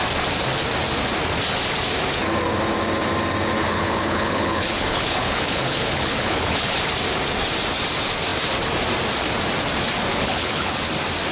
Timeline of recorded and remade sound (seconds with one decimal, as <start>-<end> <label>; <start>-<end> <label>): 0.0-3.6 recorded; 3.6-6.8 remade; 6.8-10.1 recorded; 10.1-10.9 remade; 10.9-11.3 recorded